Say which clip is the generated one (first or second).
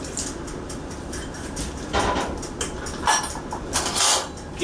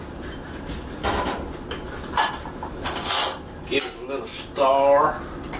first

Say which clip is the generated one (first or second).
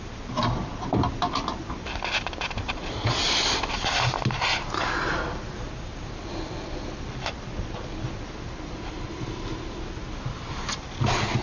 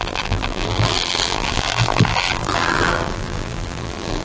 second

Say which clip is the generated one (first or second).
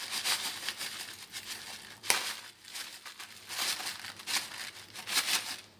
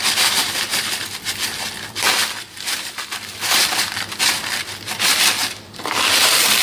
second